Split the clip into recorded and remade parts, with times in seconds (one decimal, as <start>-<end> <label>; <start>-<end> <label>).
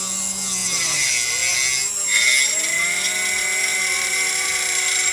0.0-3.7 recorded; 3.7-5.1 remade